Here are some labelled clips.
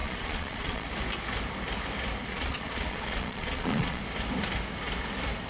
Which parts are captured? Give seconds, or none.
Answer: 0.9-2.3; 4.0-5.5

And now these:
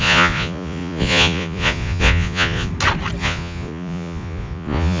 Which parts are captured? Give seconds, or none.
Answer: 2.7-3.2

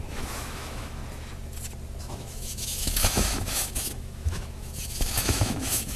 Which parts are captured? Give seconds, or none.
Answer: 1.0-2.0

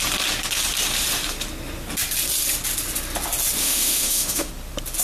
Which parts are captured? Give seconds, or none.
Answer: 0.0-3.6; 4.5-5.0

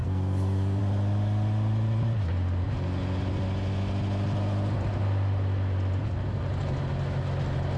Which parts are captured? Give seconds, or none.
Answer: 0.8-7.8

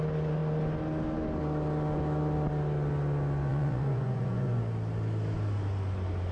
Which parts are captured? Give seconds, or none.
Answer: 0.0-3.5; 4.6-6.3

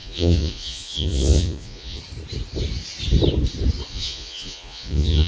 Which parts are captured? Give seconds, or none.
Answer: 2.0-3.9

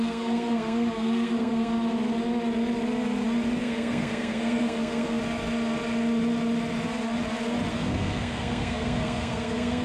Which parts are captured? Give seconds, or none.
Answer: 1.7-3.6; 5.2-7.7